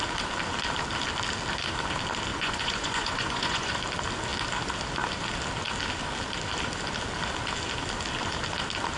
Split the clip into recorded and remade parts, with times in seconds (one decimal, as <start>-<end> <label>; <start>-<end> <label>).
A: 0.0-2.3 recorded; 2.3-3.7 remade; 3.7-9.0 recorded